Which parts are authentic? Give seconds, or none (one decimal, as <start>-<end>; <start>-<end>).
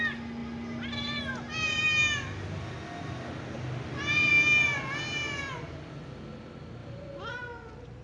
0.0-0.4; 1.2-6.8; 7.3-8.0